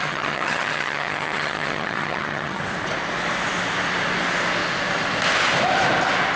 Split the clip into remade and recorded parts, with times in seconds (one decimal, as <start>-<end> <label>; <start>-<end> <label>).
0.0-2.6 remade; 2.6-6.4 recorded

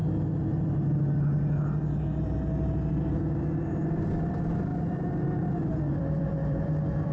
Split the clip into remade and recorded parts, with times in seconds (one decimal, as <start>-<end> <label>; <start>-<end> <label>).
0.0-4.3 recorded; 4.3-7.1 remade

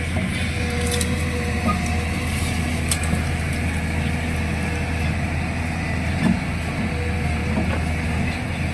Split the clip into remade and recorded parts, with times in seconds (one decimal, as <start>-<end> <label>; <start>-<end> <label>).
0.0-8.7 recorded

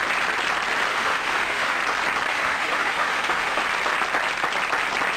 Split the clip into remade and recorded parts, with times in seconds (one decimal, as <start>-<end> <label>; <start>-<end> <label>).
0.0-0.9 recorded; 0.9-1.8 remade; 1.8-2.3 recorded; 2.3-3.6 remade; 3.6-5.2 recorded